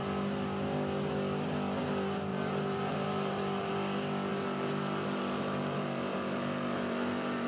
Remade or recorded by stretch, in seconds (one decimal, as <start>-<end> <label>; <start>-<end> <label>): 0.0-2.3 recorded; 2.3-3.7 remade; 3.7-4.3 recorded; 4.3-7.5 remade